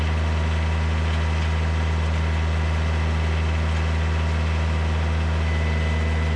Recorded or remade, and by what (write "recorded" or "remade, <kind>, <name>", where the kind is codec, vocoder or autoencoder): recorded